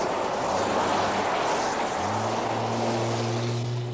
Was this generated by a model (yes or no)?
no